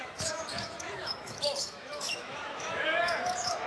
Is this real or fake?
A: fake